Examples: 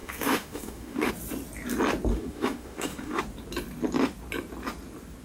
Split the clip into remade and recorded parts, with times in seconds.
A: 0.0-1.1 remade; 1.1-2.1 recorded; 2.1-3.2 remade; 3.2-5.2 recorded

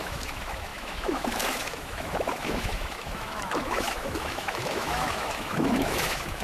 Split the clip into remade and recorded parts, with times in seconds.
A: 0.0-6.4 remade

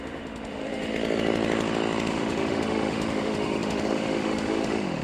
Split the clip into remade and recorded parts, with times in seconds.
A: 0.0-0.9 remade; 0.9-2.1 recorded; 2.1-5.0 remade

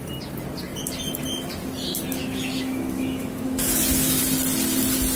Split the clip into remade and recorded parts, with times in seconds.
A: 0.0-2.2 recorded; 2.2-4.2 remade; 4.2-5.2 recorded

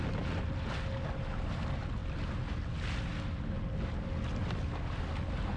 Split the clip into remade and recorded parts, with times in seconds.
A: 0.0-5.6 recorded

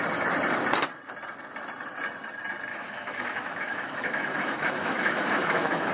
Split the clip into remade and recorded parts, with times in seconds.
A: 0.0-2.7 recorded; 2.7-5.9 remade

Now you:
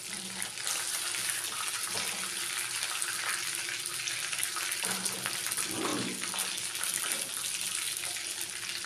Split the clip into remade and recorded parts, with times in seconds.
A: 0.0-8.9 recorded